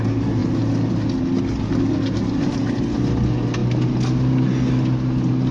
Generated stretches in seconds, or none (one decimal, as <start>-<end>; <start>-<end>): none